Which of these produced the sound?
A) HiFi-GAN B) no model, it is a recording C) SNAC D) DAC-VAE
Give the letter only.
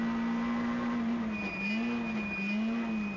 B